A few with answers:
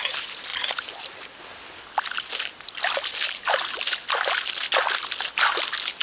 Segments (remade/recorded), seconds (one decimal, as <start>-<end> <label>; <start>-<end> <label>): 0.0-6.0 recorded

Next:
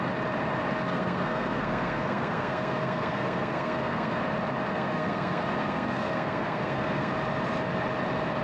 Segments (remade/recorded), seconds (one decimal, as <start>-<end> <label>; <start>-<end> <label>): 0.0-0.9 recorded; 0.9-4.2 remade; 4.2-4.7 recorded; 4.7-7.1 remade; 7.1-8.4 recorded

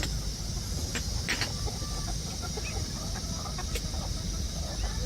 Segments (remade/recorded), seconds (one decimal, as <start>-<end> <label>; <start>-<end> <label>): 0.0-5.1 recorded

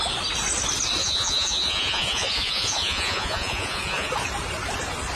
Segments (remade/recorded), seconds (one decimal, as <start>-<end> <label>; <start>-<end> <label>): 0.0-1.0 recorded; 1.0-4.1 remade; 4.1-5.2 recorded

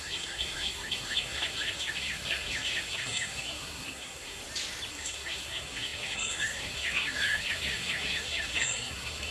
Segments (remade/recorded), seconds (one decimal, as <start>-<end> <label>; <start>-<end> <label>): 0.0-4.4 remade; 4.4-4.9 recorded; 4.9-9.3 remade

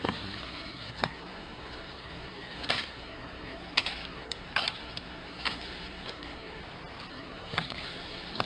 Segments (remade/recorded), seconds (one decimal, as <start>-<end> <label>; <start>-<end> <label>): 0.0-6.6 remade; 6.6-7.1 recorded; 7.1-8.5 remade